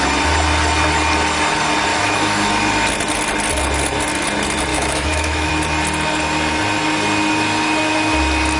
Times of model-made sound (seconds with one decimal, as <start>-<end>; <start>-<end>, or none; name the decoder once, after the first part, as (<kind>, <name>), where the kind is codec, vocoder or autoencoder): 1.9-2.5 (autoencoder, DAC-VAE); 4.7-5.5

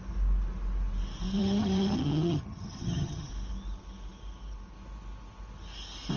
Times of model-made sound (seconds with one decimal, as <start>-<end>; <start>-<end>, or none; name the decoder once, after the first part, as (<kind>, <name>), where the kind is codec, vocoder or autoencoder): 1.4-3.3 (vocoder, HiFi-GAN)

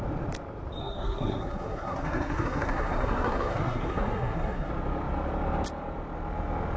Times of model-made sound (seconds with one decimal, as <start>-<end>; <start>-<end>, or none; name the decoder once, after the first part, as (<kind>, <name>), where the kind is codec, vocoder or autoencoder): 0.8-4.7 (codec, SNAC)

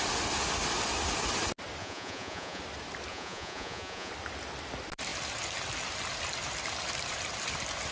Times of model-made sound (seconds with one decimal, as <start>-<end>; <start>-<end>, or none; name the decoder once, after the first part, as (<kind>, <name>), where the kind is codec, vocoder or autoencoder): 1.8-2.6 (vocoder, Vocos); 3.1-4.1

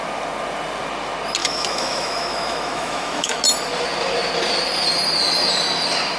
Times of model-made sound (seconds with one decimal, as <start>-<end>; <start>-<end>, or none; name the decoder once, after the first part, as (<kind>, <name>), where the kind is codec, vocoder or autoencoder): 1.4-3.4 (autoencoder, DAC-VAE)

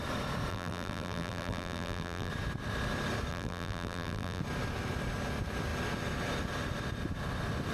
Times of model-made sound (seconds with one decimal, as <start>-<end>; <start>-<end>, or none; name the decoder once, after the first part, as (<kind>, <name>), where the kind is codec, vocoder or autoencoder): 0.5-2.3 (vocoder, BigVGAN v2); 3.3-4.4

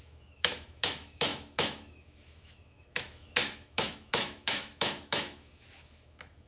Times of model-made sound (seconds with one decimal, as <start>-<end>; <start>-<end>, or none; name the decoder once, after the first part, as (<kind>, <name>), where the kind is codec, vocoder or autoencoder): 0.0-6.5 (autoencoder, DAC-VAE)

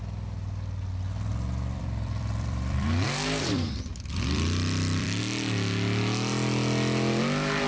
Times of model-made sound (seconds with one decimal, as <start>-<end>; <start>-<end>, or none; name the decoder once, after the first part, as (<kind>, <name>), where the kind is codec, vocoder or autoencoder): 1.3-5.2 (vocoder, BigVGAN v2)